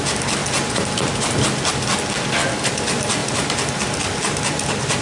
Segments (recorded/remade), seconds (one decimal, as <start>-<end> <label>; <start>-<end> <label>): 0.0-5.0 recorded